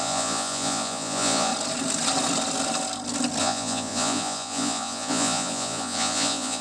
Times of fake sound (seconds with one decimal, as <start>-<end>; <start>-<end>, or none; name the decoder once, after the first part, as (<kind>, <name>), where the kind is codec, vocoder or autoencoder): 0.0-1.5 (vocoder, Vocos); 3.4-6.6